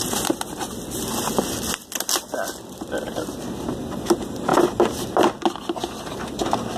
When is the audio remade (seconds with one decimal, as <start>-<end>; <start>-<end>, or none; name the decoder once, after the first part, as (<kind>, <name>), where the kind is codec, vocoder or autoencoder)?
none